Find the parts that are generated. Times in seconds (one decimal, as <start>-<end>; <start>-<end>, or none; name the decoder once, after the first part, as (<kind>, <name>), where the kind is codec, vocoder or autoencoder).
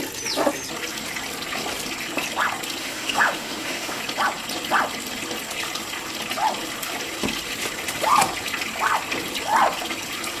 2.8-4.0 (autoencoder, DAC-VAE)